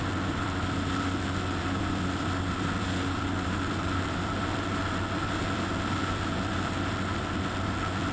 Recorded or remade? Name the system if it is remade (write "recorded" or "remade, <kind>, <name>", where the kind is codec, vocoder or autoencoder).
remade, vocoder, BigVGAN v2